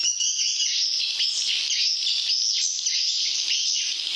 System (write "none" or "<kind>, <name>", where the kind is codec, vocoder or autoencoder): none